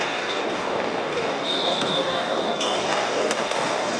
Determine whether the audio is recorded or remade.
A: remade